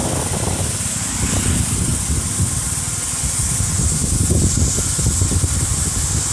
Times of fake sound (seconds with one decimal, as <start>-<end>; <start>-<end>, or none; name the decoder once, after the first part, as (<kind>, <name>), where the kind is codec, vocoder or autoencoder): none